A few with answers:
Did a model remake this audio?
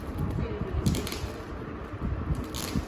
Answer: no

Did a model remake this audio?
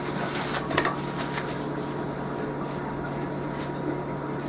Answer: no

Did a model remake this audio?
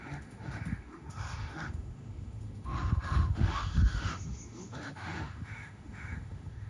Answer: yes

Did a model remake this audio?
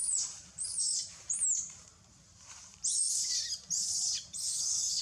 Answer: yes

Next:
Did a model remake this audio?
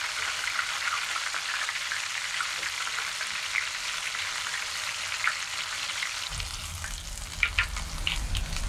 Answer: no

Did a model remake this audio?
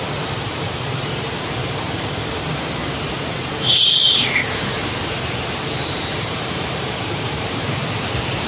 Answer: yes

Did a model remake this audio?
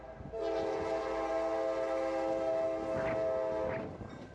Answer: no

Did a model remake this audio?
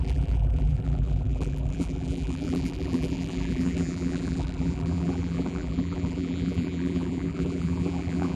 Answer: yes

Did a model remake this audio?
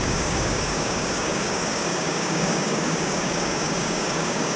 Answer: yes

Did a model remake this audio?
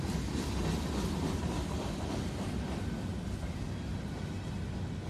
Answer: no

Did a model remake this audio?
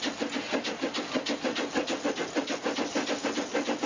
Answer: no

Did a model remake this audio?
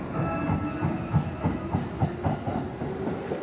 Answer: no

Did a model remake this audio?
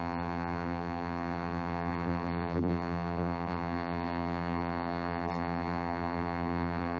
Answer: yes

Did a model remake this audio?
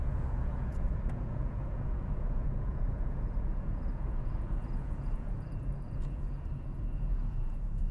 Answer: yes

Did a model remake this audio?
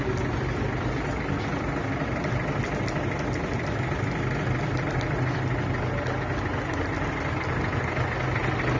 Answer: no